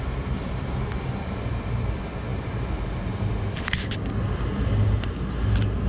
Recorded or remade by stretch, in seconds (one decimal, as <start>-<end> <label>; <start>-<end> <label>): 0.0-5.9 recorded